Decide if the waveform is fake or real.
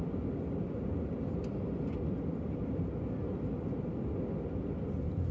real